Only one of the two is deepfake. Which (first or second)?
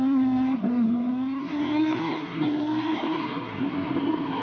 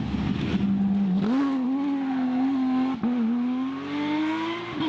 first